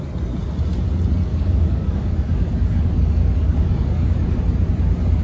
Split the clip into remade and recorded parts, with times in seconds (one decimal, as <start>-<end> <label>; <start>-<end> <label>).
0.0-1.3 recorded; 1.3-4.4 remade; 4.4-5.2 recorded